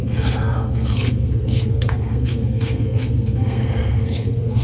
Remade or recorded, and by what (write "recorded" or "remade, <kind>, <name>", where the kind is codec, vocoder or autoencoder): remade, codec, SNAC